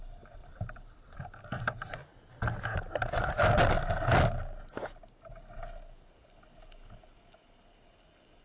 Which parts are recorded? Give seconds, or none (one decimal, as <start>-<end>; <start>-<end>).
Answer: 0.0-0.4; 1.7-2.1; 3.3-8.4